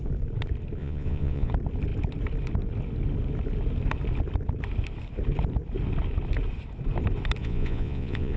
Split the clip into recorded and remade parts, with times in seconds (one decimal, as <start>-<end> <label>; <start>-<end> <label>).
0.0-0.8 recorded; 0.8-1.5 remade; 1.5-7.4 recorded; 7.4-8.4 remade